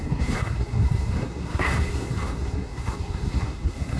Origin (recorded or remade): remade